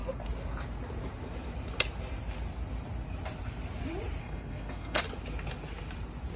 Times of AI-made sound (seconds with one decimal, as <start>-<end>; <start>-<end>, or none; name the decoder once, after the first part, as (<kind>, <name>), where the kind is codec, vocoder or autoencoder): 4.2-5.0 (codec, SNAC)